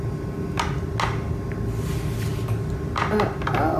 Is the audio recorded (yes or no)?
yes